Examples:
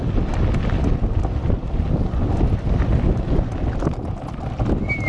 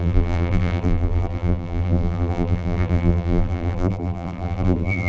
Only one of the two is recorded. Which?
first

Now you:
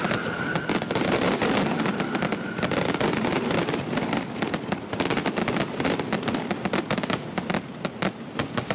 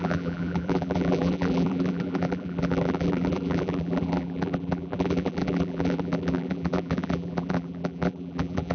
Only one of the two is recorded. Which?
first